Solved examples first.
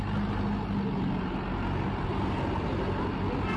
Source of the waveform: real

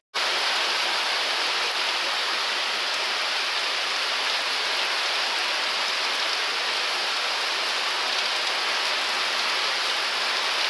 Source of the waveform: real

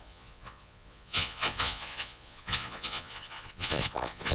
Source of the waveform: fake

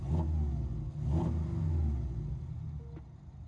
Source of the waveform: real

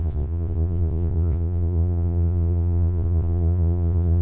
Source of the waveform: fake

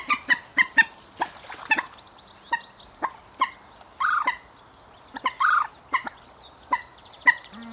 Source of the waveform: real